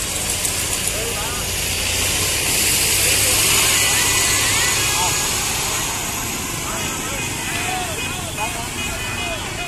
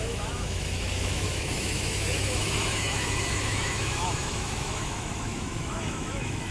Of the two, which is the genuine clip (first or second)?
first